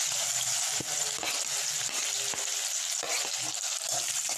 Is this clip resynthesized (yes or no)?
no